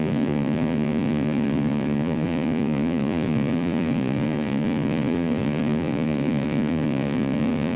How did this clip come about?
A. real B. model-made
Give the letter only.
B